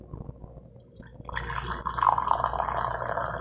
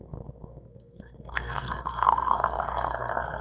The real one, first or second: first